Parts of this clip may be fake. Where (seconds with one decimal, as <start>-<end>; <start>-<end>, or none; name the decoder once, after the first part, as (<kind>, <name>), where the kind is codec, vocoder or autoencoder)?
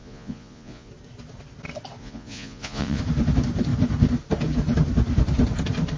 0.0-0.9 (vocoder, Vocos); 2.0-3.0